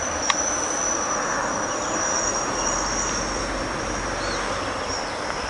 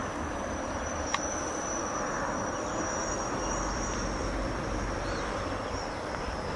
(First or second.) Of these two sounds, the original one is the first